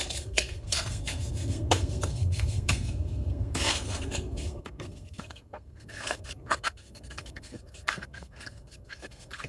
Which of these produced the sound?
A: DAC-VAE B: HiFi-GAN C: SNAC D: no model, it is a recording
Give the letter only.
C